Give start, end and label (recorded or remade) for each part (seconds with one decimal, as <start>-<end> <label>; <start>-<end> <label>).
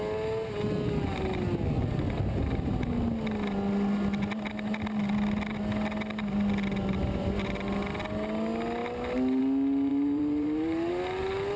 0.0-9.9 recorded; 9.9-10.9 remade; 10.9-11.6 recorded